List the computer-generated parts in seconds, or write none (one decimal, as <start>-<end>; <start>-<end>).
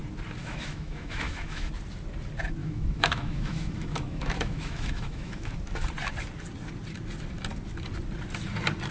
0.4-1.7; 2.6-5.6